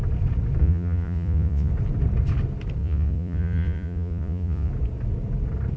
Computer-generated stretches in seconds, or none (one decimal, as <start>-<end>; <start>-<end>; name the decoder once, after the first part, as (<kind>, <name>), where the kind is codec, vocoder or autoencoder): 0.6-1.7 (vocoder, Vocos); 2.8-4.7